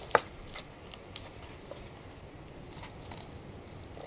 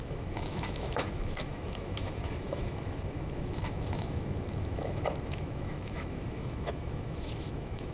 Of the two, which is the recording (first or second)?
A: first